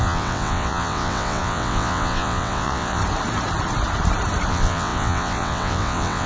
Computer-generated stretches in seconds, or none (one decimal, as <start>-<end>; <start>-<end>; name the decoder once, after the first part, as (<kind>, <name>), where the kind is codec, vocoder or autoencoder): 0.0-3.0 (vocoder, WaveNeXt); 4.5-6.3

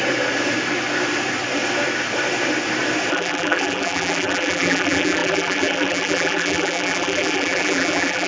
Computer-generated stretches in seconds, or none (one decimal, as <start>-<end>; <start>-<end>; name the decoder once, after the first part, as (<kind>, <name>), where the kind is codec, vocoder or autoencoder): 3.1-8.3 (vocoder, BigVGAN v2)

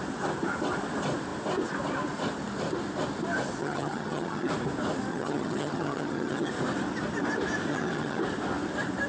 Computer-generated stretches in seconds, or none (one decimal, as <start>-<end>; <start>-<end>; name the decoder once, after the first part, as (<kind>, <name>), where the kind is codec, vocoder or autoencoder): 3.6-4.5 (vocoder, HiFi-GAN); 5.1-6.5; 7.7-8.2

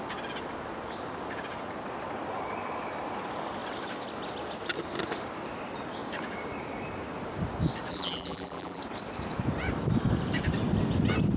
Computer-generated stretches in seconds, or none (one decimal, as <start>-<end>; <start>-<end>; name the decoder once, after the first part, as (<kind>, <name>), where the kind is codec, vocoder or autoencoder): 7.9-8.8 (vocoder, BigVGAN v2)

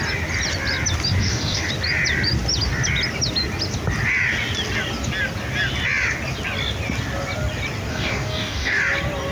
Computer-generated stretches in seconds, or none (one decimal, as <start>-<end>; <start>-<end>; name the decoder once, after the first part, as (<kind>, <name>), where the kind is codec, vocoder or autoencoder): 1.2-1.7 (codec, DAC); 7.9-8.8

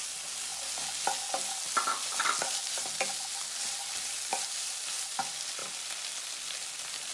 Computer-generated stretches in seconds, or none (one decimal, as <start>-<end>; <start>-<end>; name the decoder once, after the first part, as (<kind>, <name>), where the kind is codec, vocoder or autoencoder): 5.6-6.1 (vocoder, BigVGAN v2)